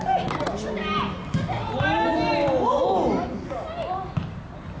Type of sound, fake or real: real